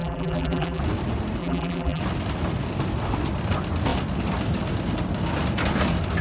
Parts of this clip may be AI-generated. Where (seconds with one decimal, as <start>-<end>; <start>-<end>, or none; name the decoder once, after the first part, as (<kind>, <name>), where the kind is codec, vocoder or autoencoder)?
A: 0.0-0.8 (vocoder, BigVGAN v2); 1.4-2.0